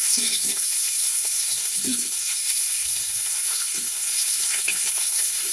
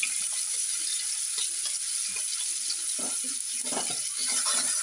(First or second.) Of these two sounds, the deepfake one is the first